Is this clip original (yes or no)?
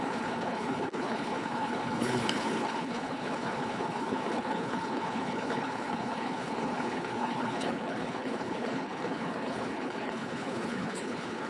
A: no